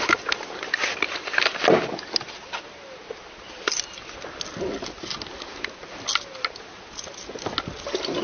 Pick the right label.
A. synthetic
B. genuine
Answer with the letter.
B